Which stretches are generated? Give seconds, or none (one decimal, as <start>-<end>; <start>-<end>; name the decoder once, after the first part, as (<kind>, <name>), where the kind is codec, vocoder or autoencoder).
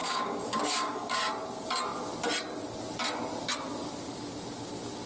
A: 0.0-1.3 (codec, DAC)